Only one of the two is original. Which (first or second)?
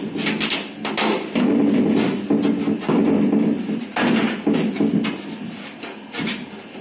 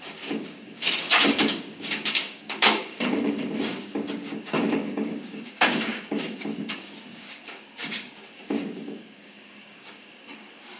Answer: first